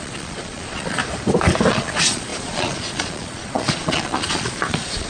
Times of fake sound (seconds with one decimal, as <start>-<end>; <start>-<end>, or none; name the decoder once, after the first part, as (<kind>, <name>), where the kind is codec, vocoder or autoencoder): 0.0-1.0 (vocoder, Vocos); 1.7-5.1